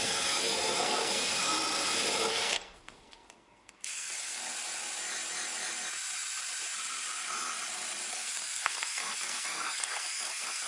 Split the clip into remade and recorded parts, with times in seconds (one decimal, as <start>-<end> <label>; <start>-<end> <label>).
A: 0.0-1.5 remade; 1.5-2.3 recorded; 2.3-4.4 remade; 4.4-8.1 recorded; 8.1-10.7 remade